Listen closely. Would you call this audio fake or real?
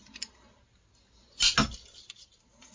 real